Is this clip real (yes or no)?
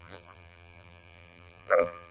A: no